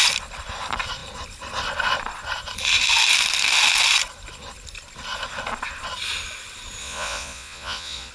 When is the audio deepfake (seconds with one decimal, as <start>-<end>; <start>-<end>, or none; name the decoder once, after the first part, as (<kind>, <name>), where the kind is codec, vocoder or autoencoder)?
6.8-8.1 (vocoder, Vocos)